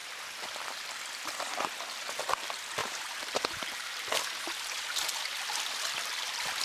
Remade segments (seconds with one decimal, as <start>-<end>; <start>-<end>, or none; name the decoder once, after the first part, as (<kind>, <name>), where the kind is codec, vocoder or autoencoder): 2.8-4.4 (vocoder, BigVGAN v2)